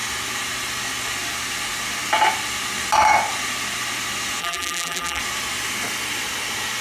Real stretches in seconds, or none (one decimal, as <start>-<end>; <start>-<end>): 0.0-4.4; 5.2-6.8